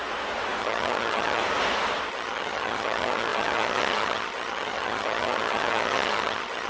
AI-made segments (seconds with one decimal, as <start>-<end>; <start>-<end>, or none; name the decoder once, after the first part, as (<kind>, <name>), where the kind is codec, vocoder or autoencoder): 0.6-1.4 (vocoder, HiFi-GAN); 2.1-6.7